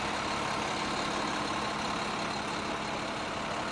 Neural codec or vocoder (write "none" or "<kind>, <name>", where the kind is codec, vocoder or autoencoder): none